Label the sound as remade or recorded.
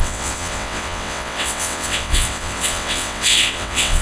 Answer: remade